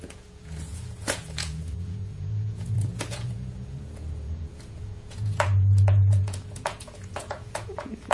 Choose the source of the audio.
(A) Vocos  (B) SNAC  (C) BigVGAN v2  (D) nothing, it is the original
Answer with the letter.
A